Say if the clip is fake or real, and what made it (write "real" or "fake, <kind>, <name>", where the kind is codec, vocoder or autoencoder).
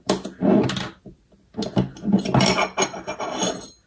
real